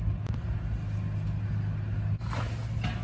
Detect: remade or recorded recorded